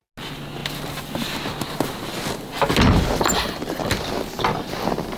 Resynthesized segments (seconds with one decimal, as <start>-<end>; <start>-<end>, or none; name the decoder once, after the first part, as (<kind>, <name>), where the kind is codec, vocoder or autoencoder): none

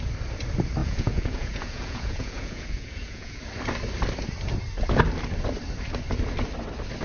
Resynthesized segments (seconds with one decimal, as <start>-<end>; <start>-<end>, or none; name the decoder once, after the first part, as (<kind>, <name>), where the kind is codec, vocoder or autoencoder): 0.8-3.4 (vocoder, Vocos)

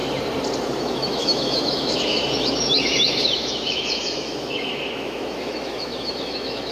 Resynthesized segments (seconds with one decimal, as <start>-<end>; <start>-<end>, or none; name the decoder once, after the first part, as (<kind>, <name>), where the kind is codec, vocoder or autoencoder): 0.8-6.7 (autoencoder, DAC-VAE)